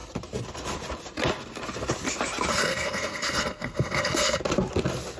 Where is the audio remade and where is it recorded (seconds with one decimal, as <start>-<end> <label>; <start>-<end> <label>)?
0.0-2.5 recorded; 2.5-4.4 remade; 4.4-5.2 recorded